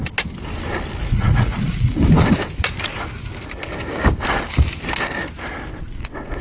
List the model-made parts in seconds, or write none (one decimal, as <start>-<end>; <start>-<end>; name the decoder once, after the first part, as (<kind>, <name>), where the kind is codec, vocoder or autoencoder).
1.0-2.0 (vocoder, Vocos); 5.8-6.4